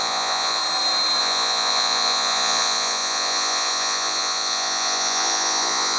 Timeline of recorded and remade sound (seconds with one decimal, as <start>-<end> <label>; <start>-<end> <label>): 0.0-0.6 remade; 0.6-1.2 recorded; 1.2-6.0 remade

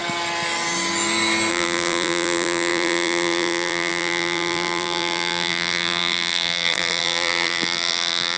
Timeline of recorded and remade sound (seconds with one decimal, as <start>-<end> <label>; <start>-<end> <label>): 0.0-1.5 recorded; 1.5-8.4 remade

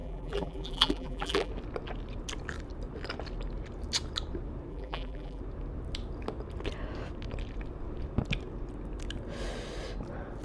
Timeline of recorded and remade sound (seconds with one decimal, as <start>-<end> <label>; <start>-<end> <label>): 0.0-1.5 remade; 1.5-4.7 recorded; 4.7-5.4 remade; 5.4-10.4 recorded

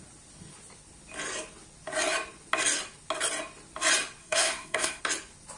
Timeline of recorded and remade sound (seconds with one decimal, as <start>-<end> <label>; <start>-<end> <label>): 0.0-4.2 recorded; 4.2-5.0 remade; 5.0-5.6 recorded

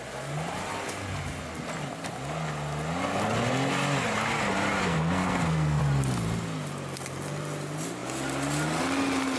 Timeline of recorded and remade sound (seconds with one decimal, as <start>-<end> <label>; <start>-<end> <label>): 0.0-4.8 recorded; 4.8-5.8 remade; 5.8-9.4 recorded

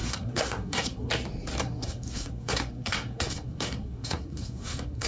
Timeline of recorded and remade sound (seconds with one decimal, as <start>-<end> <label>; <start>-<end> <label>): 0.0-1.1 remade; 1.1-1.6 recorded; 1.6-5.1 remade